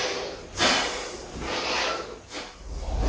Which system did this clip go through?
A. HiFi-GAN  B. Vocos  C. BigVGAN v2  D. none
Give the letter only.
D